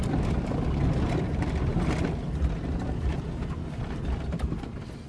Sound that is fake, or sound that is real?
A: real